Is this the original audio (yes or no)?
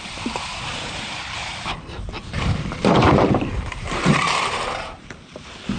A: no